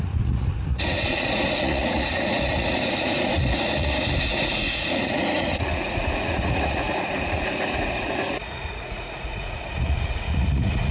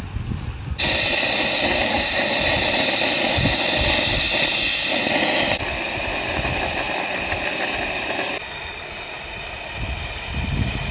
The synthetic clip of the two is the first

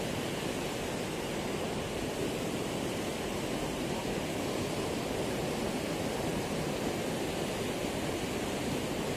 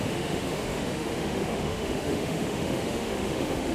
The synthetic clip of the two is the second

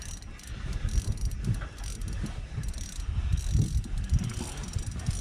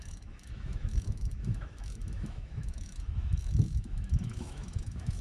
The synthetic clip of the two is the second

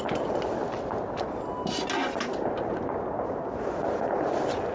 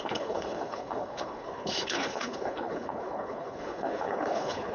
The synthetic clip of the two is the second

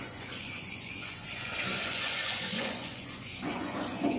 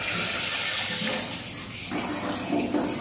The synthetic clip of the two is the first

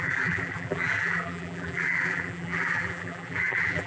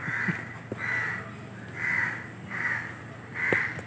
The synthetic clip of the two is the first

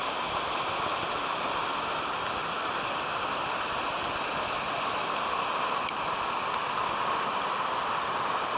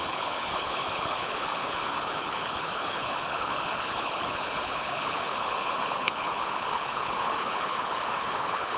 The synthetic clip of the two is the second